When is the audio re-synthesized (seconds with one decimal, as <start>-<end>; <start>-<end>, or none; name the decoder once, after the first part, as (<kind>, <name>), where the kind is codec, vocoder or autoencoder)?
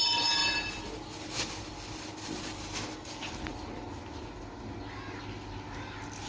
none